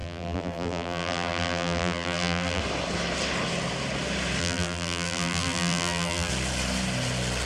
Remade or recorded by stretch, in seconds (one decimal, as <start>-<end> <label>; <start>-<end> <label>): 0.0-2.6 remade; 2.6-4.4 recorded; 4.4-6.3 remade; 6.3-7.5 recorded